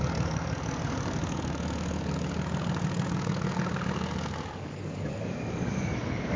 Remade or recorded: remade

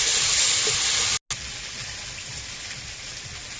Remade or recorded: recorded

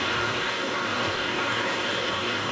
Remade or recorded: remade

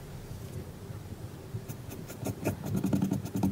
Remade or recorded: recorded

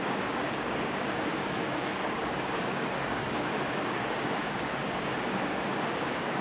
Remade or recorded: remade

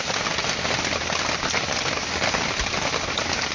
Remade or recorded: recorded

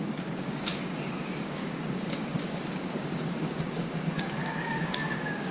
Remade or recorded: remade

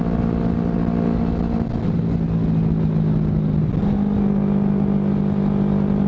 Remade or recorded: recorded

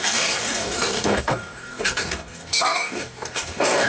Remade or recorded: remade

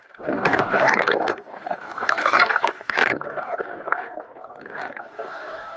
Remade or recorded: remade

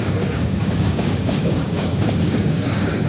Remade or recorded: remade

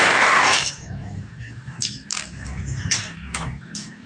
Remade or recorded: remade